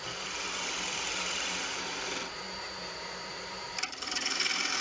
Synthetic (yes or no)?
yes